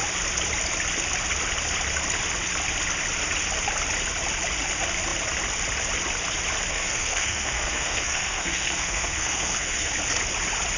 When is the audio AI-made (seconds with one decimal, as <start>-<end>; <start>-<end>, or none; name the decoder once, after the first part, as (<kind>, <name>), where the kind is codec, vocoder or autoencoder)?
6.7-9.9 (codec, SNAC)